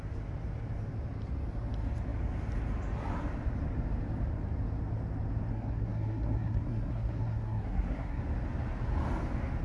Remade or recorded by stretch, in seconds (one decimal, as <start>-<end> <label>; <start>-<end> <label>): 0.0-5.5 recorded; 5.5-8.2 remade; 8.2-9.6 recorded